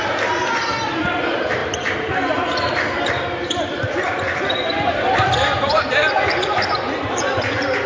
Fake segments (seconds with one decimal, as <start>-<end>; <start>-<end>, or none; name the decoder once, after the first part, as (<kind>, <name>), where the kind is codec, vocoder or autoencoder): 0.0-7.9 (vocoder, BigVGAN v2)